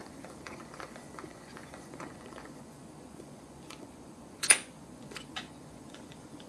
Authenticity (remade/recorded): remade